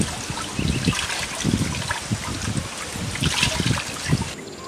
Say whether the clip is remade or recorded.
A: recorded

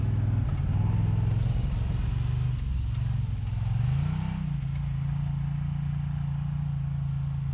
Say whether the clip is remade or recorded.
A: recorded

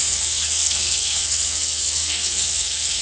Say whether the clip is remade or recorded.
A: remade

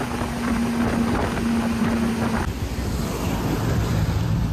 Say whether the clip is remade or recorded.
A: recorded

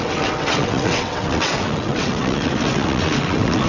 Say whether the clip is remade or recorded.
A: remade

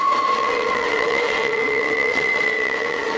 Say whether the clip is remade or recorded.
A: remade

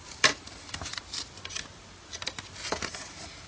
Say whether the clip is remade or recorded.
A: remade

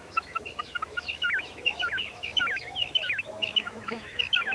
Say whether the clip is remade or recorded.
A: remade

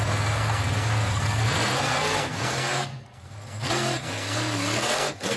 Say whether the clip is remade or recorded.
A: remade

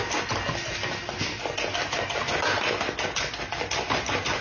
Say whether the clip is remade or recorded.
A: recorded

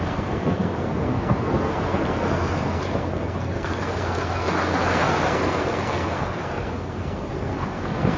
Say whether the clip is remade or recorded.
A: remade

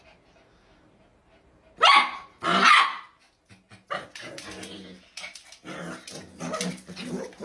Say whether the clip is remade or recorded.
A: recorded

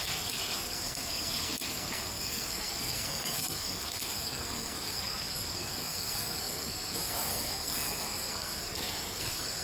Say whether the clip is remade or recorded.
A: remade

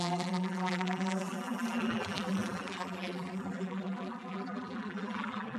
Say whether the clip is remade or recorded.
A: remade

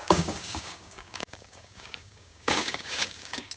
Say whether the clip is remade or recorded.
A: remade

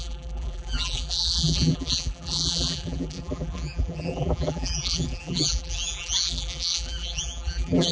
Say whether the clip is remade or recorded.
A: remade